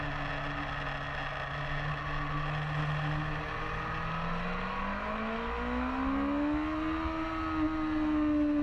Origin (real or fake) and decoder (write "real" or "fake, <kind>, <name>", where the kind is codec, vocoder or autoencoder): real